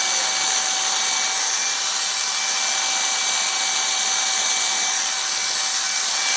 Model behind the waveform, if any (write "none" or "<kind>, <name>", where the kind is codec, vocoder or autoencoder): none